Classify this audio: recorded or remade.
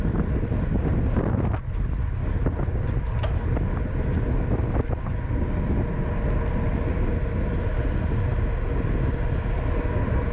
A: recorded